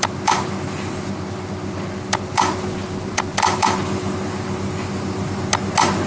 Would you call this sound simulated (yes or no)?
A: no